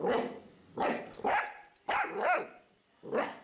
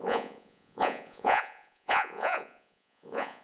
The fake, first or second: second